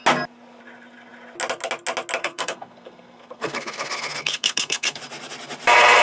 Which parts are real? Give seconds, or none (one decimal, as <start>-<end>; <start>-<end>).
0.0-2.2; 5.0-6.0